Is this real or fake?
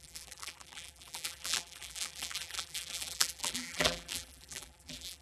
fake